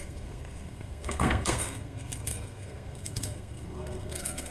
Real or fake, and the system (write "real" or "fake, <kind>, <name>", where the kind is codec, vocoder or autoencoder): fake, codec, SNAC